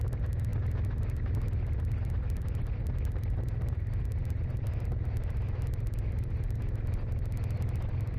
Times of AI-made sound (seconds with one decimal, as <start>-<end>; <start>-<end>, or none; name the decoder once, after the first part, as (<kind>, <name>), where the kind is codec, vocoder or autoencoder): none